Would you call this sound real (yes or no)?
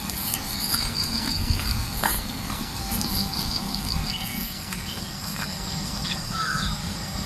no